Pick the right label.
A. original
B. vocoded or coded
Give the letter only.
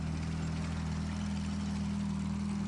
A